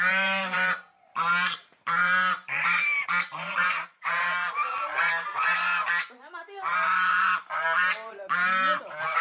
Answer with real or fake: fake